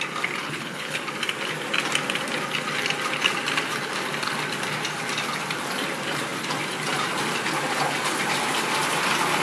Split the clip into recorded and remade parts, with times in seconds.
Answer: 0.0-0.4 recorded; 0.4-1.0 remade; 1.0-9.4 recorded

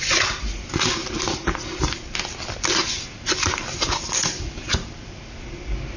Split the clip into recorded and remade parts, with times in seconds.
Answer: 0.0-6.0 recorded

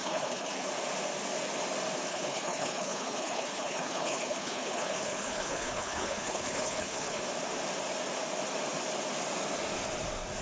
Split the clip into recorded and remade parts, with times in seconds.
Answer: 0.0-0.7 remade; 0.7-2.1 recorded; 2.1-7.2 remade; 7.2-10.4 recorded